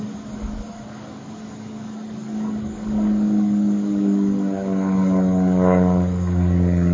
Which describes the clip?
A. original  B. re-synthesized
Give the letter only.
B